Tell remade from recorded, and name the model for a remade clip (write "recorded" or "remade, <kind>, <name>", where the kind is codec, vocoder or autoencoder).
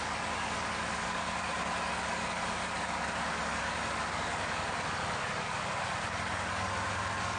remade, codec, DAC